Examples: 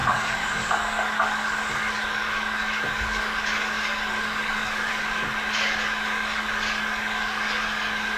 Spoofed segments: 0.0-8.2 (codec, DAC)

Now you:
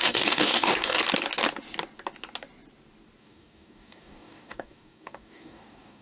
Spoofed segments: 0.0-1.0 (codec, DAC); 3.2-6.0

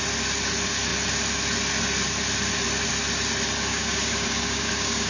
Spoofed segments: 3.7-5.1 (codec, DAC)

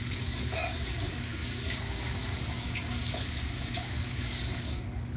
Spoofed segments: 0.0-5.2 (codec, DAC)

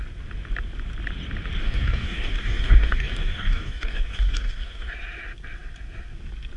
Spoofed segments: 1.6-4.9 (codec, DAC)

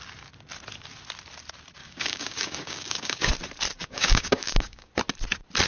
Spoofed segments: 1.8-3.3 (codec, DAC); 3.8-4.9

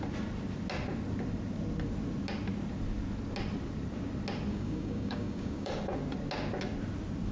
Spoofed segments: 4.5-5.7 (codec, DAC)